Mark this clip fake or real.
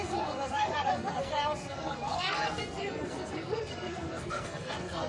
fake